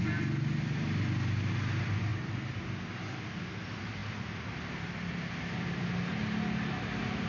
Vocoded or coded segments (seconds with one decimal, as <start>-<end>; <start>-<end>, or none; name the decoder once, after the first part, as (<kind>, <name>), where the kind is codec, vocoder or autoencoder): none